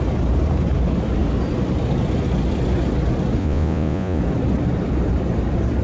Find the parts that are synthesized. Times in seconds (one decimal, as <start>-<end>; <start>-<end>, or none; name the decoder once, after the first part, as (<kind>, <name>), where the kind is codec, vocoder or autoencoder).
3.4-4.2 (vocoder, Vocos)